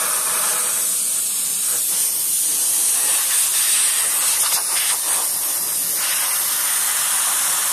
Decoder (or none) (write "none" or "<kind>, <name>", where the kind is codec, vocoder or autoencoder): none